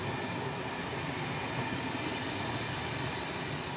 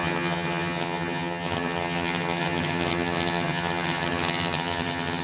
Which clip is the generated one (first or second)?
second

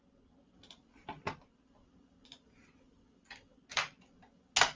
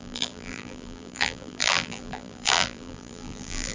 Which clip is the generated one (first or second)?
second